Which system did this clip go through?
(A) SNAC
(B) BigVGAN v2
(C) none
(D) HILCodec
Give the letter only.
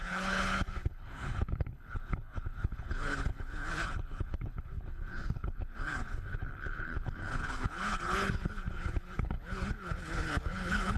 D